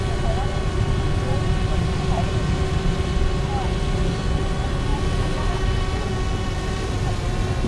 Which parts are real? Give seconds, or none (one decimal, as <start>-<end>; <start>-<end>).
0.0-7.7